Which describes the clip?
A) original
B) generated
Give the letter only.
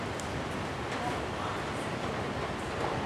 A